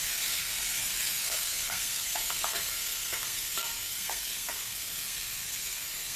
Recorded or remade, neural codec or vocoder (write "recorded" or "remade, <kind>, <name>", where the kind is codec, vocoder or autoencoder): remade, codec, SNAC